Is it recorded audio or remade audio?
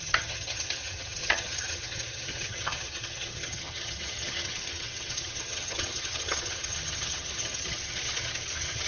remade